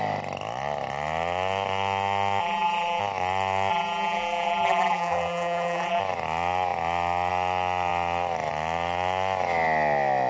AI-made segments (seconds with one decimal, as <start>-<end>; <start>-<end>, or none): 2.4-3.0; 3.7-6.0